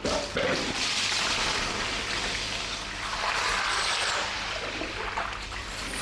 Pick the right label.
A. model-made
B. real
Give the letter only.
B